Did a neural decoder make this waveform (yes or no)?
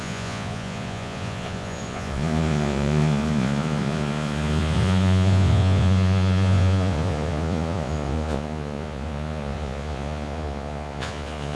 yes